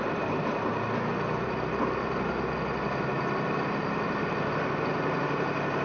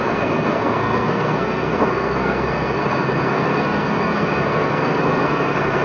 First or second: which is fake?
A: second